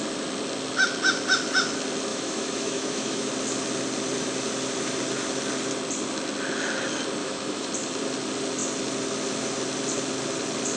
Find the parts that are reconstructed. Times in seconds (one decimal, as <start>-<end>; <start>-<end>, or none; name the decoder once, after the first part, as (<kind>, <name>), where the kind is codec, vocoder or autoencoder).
2.1-3.3 (autoencoder, DAC-VAE); 7.2-7.7